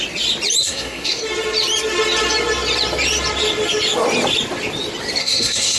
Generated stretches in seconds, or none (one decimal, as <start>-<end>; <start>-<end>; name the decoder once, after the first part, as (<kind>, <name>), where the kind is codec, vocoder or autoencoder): 0.6-1.2 (codec, SNAC); 5.2-5.8